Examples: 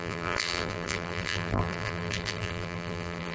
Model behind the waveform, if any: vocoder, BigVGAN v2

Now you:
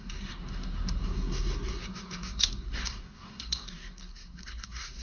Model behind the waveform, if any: codec, SNAC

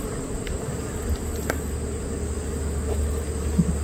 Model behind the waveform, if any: none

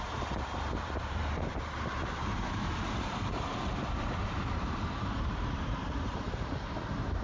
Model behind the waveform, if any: vocoder, BigVGAN v2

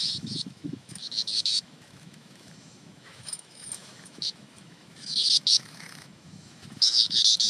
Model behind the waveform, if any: autoencoder, DAC-VAE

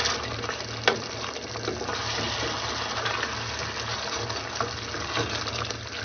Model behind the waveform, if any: none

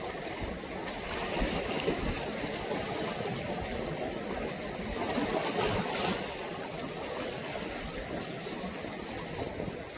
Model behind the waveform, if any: none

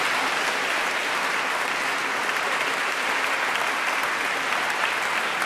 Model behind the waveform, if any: none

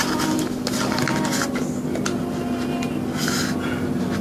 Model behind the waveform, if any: none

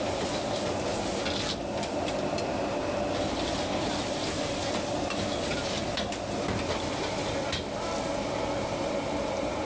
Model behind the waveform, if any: none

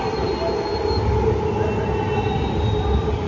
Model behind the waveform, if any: none